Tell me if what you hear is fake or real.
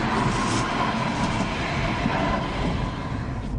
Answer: real